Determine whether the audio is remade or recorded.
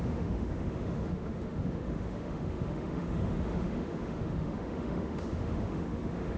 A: remade